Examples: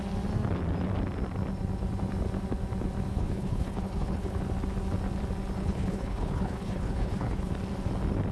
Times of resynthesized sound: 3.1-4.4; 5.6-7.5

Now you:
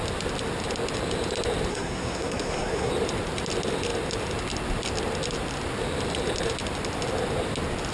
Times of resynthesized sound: 1.7-2.9

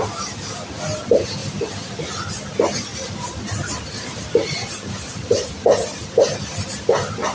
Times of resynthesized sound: 2.9-5.1

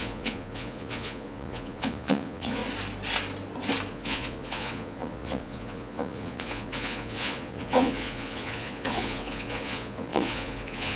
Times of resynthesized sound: 0.0-2.6; 3.9-11.0

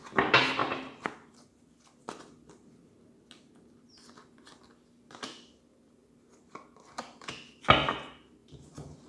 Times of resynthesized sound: 8.4-9.1

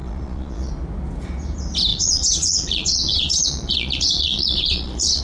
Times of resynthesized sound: 0.0-0.7; 1.9-5.2

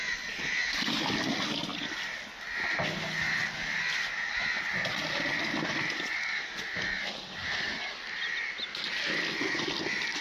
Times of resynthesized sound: none

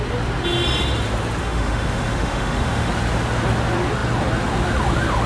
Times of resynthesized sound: 1.4-2.9